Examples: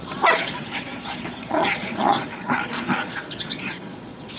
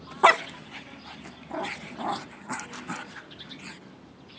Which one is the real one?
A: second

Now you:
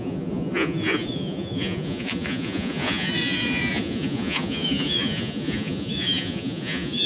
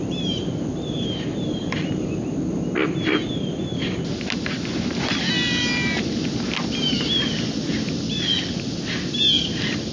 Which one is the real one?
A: second